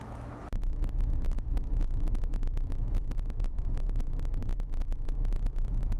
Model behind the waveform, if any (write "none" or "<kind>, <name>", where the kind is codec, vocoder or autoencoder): autoencoder, DAC-VAE